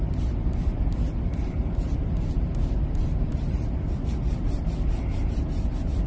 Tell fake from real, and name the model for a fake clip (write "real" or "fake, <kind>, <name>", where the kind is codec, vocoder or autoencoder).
fake, vocoder, BigVGAN v2